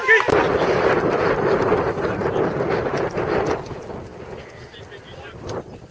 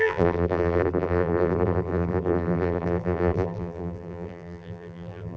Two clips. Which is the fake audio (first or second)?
second